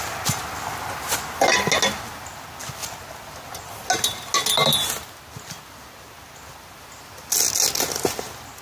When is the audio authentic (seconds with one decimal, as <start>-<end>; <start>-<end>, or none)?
0.0-8.6

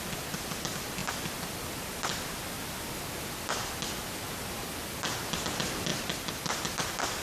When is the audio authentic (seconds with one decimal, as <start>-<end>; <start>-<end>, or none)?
0.0-7.2

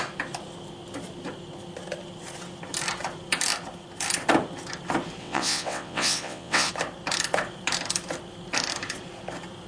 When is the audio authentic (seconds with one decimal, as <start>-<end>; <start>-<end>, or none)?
0.0-5.2; 6.7-9.7

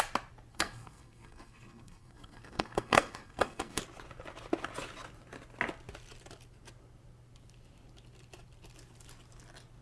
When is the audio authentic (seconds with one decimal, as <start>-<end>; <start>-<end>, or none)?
0.0-0.5; 3.8-9.8

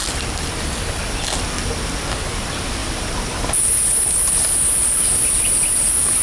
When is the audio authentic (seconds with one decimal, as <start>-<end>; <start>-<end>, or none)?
0.0-6.2

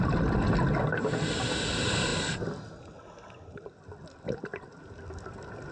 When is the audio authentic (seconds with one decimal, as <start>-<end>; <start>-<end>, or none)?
0.0-5.7

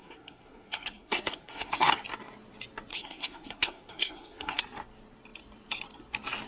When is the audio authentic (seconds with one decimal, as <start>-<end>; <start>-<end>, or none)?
1.9-2.9; 4.6-6.5